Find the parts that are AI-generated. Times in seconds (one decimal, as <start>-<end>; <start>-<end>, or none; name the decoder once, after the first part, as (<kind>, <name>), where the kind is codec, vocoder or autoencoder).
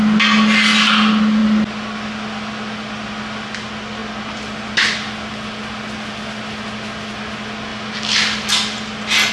none